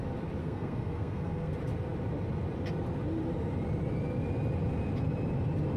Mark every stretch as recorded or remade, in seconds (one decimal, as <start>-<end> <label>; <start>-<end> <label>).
0.0-0.4 recorded; 0.4-1.5 remade; 1.5-5.8 recorded